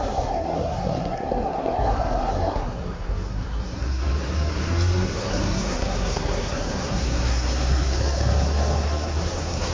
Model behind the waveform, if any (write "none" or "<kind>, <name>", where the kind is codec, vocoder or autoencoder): codec, SNAC